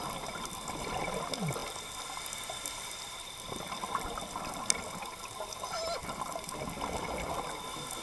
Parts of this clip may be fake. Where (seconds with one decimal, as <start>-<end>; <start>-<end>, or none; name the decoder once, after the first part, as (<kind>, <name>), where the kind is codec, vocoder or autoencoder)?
1.6-4.5 (vocoder, BigVGAN v2)